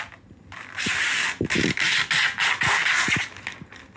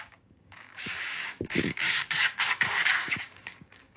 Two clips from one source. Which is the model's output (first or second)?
second